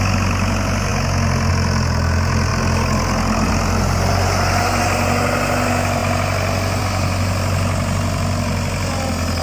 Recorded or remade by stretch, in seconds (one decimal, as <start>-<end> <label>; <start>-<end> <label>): 0.0-9.4 recorded